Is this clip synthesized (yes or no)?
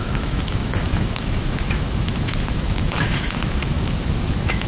yes